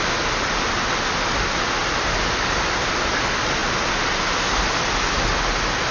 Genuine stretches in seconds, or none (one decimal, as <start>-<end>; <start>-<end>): 0.0-5.9